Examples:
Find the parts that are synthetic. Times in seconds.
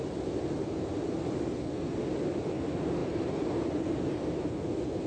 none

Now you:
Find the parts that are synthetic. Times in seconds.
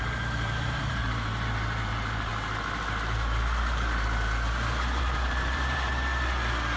0.0-2.3 (vocoder, BigVGAN v2); 5.0-5.9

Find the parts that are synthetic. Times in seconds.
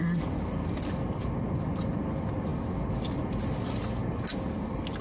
none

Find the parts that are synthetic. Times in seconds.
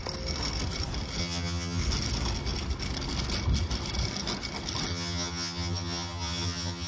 1.2-1.8 (vocoder, HiFi-GAN); 4.9-6.9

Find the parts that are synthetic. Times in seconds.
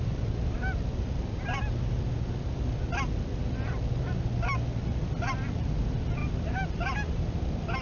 0.0-0.6 (vocoder, BigVGAN v2); 4.8-7.8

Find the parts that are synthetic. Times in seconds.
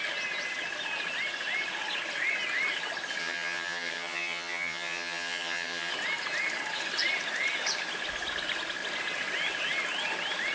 3.2-5.9 (vocoder, HiFi-GAN)